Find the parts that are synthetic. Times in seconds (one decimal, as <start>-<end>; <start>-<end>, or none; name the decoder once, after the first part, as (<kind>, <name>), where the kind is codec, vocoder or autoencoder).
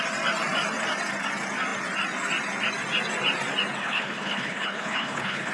3.8-5.5 (codec, HILCodec)